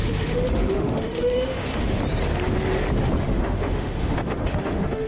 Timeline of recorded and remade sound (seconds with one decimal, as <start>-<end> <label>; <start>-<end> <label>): 0.0-2.0 remade; 2.0-3.2 recorded; 3.2-5.1 remade